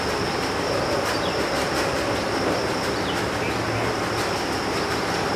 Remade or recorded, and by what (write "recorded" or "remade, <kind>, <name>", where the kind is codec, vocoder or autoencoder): recorded